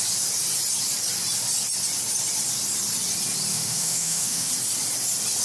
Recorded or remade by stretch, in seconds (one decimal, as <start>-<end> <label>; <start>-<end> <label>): 0.0-3.5 recorded; 3.5-4.5 remade; 4.5-5.4 recorded